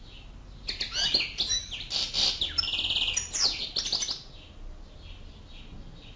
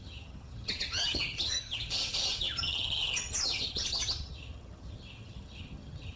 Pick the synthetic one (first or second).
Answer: second